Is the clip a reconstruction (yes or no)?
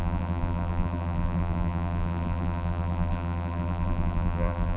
yes